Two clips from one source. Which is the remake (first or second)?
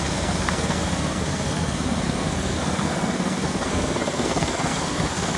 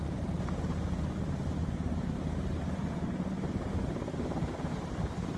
first